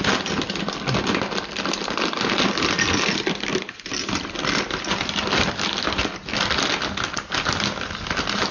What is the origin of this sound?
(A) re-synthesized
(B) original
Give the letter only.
B